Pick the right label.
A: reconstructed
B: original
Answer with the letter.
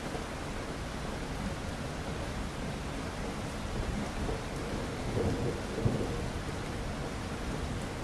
B